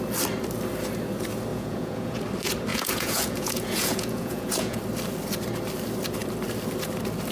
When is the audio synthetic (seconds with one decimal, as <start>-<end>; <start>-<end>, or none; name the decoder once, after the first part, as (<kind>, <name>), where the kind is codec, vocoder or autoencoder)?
1.5-2.2 (vocoder, Vocos); 2.7-4.8